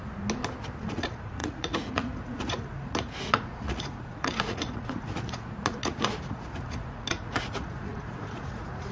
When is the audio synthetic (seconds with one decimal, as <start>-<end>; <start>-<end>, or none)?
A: 0.8-8.9